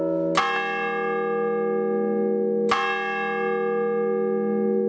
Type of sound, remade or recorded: recorded